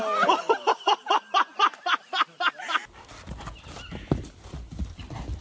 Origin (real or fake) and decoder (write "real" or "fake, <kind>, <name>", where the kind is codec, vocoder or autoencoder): real